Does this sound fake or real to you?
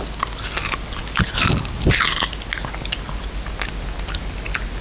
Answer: real